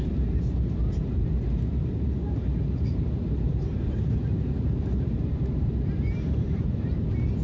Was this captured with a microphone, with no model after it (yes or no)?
no